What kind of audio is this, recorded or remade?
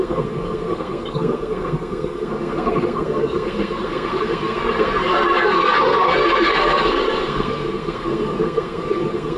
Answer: remade